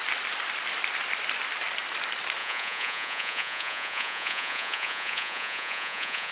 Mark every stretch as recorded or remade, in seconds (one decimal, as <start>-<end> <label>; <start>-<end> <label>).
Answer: 0.0-2.4 recorded; 2.4-6.3 remade